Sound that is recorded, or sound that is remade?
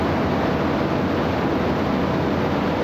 recorded